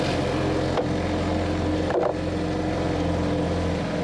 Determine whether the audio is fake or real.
real